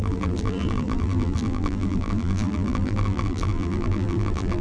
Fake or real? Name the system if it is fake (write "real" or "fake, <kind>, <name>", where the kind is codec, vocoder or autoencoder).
fake, vocoder, BigVGAN v2